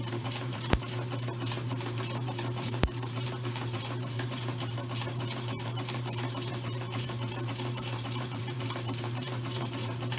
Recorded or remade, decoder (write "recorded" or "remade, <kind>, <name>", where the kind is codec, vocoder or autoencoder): remade, vocoder, BigVGAN v2